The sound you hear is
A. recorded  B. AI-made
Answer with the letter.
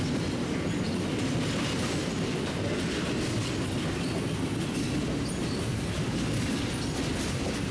A